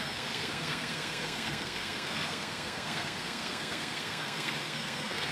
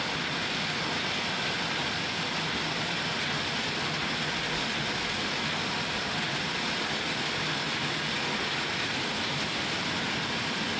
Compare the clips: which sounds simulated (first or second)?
first